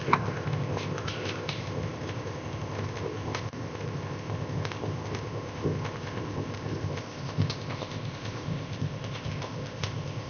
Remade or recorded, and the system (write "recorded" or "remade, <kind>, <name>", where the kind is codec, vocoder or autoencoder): remade, codec, ZipCodec